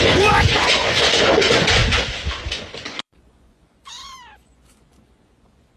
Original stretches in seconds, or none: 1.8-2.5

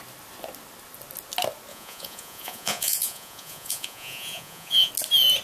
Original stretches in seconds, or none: 0.0-1.7; 4.9-5.4

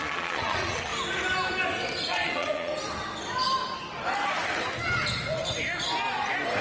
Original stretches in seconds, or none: 0.9-2.1; 2.7-6.6

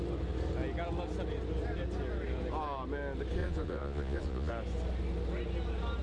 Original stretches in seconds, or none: 0.0-3.4; 4.5-6.0

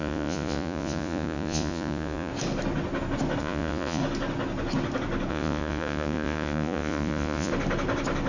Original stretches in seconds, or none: 2.3-3.4; 4.0-5.3; 7.5-8.3

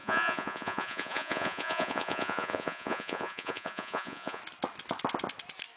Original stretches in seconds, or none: 4.4-5.8